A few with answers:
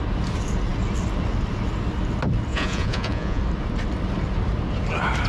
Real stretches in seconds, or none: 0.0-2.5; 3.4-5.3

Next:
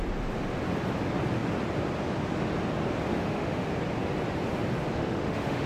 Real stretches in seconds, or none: 0.0-3.1; 3.7-5.0

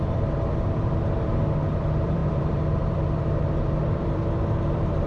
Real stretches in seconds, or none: none

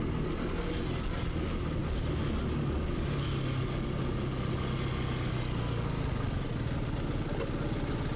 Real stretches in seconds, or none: 0.0-8.2

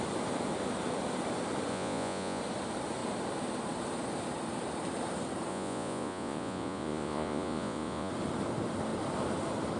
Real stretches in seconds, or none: 0.0-1.7; 2.4-5.5; 8.1-9.8

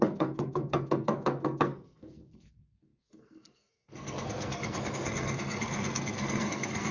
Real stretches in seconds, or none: none

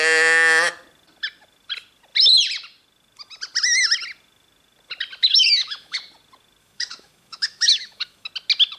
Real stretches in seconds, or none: 0.0-5.2; 6.0-6.6; 8.3-8.8